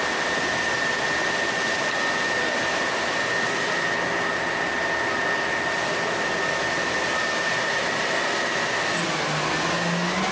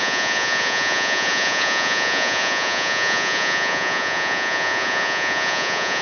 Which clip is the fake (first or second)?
second